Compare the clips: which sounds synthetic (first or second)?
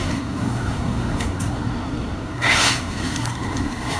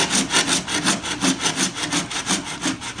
first